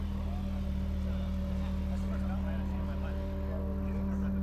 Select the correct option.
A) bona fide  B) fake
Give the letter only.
A